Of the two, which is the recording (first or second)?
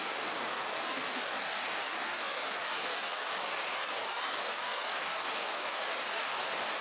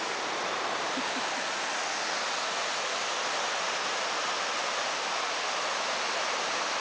second